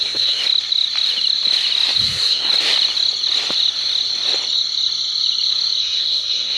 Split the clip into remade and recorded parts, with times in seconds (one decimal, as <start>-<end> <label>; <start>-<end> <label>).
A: 0.0-0.4 remade; 0.4-2.0 recorded; 2.0-2.5 remade; 2.5-5.8 recorded; 5.8-6.6 remade